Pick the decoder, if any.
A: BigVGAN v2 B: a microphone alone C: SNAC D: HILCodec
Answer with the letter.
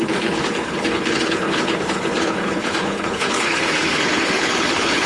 D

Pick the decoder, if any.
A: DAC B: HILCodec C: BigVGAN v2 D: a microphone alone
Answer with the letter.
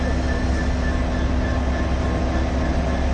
D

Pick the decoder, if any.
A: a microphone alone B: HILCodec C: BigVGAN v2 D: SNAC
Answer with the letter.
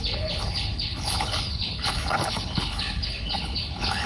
B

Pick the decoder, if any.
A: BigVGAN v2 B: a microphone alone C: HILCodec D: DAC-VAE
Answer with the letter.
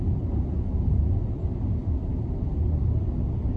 B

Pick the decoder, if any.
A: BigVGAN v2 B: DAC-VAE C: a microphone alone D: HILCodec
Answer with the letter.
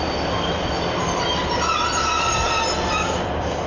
C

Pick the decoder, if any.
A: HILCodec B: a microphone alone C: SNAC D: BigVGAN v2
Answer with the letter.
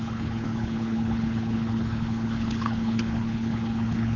A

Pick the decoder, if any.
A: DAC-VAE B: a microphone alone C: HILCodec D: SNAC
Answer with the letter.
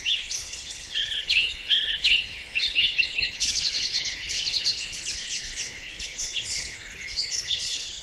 C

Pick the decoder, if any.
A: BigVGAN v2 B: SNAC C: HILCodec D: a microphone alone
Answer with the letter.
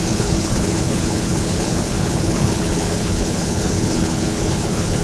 C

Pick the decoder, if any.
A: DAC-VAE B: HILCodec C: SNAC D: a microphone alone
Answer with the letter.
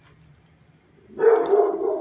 D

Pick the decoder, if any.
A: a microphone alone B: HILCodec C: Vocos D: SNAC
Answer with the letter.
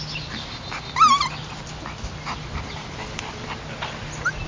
A